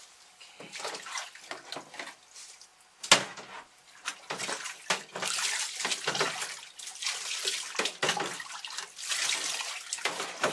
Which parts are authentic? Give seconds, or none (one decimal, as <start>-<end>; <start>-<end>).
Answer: 0.0-5.1; 6.1-10.5